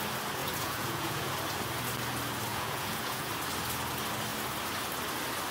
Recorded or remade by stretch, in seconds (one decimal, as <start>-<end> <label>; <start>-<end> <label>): 0.0-0.4 recorded; 0.4-1.3 remade; 1.3-2.5 recorded; 2.5-3.3 remade; 3.3-5.5 recorded